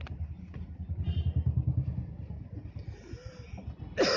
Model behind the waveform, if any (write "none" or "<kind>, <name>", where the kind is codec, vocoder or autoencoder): none